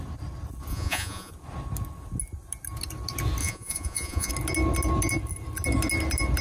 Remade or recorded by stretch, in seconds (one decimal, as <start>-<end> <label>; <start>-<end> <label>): 0.0-0.7 recorded; 0.7-1.3 remade; 1.3-3.4 recorded; 3.4-4.3 remade; 4.3-6.4 recorded